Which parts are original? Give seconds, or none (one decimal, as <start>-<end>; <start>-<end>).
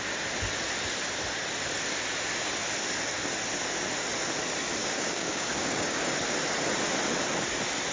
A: 0.0-4.8; 6.0-7.9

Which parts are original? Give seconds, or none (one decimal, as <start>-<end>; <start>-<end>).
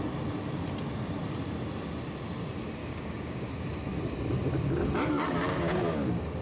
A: 0.0-2.8; 3.5-5.5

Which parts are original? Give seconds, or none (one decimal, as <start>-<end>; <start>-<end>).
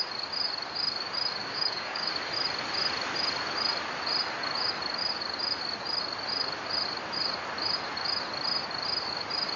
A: 0.0-1.4; 2.1-9.6